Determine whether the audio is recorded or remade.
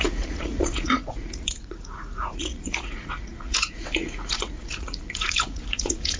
remade